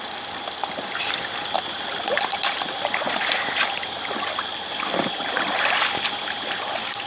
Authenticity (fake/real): real